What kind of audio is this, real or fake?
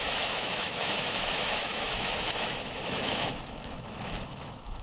fake